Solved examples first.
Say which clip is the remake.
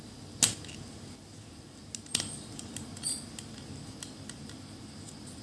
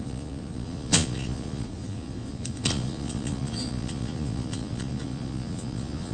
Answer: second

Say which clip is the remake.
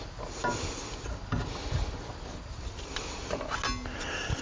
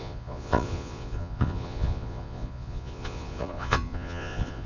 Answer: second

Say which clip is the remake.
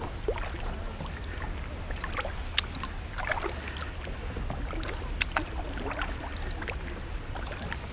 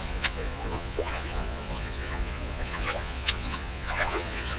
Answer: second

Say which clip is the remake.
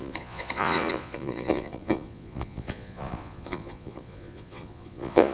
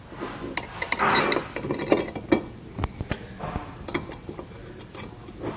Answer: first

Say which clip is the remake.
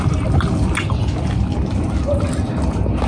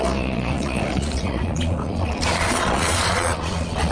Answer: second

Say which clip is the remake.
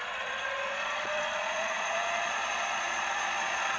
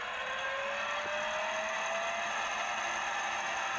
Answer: first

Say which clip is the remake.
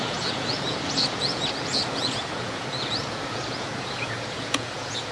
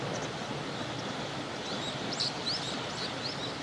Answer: first